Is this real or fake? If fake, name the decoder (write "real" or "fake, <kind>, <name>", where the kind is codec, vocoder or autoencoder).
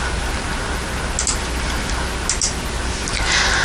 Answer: real